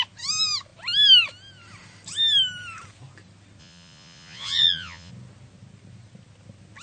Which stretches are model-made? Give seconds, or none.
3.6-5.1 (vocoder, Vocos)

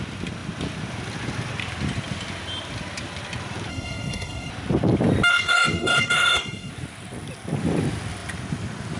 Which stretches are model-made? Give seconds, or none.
3.7-4.5 (codec, SNAC); 5.3-6.7

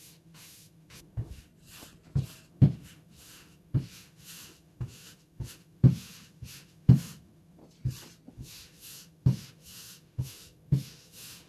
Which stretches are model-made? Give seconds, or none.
0.0-1.5 (autoencoder, DAC-VAE); 2.5-7.6; 8.3-11.5

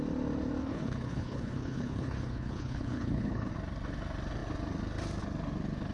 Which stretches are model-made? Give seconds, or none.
0.6-3.5 (codec, HILCodec)

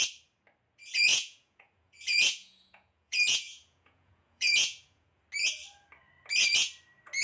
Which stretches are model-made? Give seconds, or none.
1.1-5.2 (vocoder, Vocos)

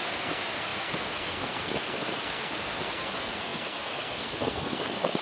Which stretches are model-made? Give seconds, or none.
0.0-5.2 (codec, SNAC)

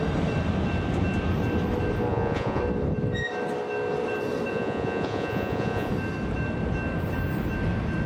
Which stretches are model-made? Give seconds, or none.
2.1-2.6 (vocoder, Vocos); 4.5-5.9

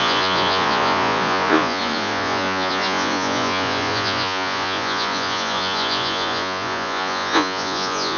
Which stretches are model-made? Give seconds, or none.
0.0-8.2 (vocoder, Vocos)